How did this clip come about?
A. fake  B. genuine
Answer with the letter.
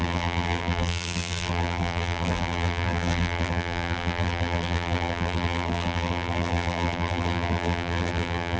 A